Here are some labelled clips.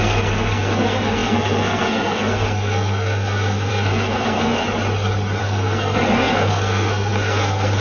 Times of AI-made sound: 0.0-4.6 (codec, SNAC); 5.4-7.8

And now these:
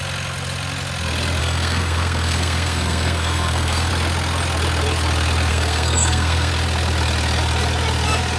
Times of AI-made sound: 1.4-3.9 (codec, SNAC); 5.5-6.5

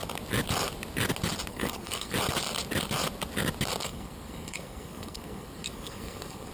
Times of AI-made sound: 1.5-2.1 (codec, SNAC); 3.8-6.5

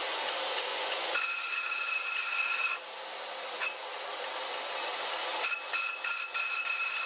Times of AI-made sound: 0.7-1.9 (vocoder, Vocos)

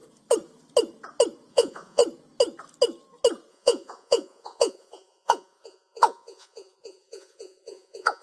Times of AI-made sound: 1.5-2.0 (vocoder, Vocos); 3.5-8.2

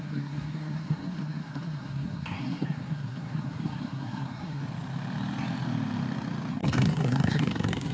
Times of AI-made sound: 0.0-4.6 (codec, SNAC); 6.5-7.9

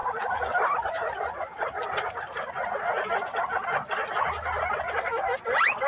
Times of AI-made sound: 0.0-2.1 (vocoder, BigVGAN v2)